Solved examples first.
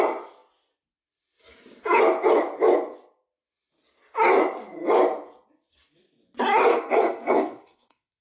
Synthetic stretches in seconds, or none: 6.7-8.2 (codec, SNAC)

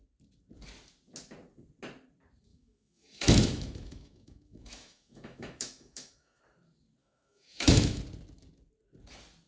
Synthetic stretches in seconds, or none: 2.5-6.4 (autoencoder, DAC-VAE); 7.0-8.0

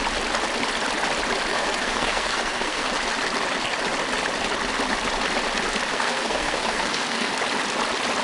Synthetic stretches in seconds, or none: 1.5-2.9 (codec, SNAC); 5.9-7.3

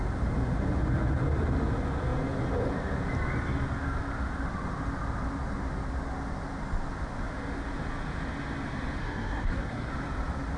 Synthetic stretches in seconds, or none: 9.0-9.9 (codec, SNAC)

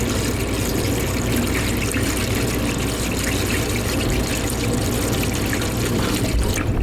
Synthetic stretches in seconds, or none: none

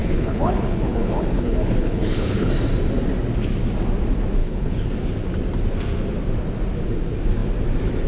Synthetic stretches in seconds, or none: 0.0-2.5 (codec, HILCodec); 4.4-4.9

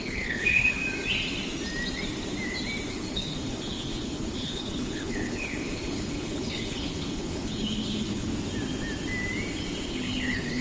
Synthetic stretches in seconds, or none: 0.0-0.8 (codec, HILCodec); 2.9-8.3; 9.9-10.6

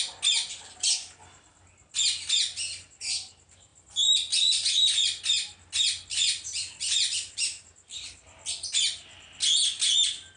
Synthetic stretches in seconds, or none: none